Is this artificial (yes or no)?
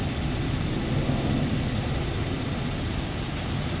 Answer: no